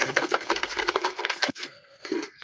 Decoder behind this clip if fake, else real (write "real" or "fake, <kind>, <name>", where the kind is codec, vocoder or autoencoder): fake, codec, SNAC